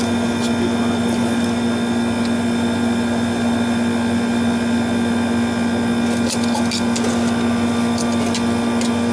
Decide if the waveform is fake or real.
real